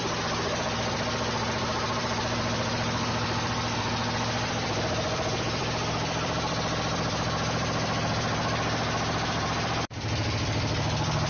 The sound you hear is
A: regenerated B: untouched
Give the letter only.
A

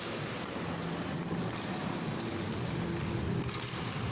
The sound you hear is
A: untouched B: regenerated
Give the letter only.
A